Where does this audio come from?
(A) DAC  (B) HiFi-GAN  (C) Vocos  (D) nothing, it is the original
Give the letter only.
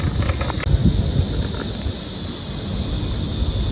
D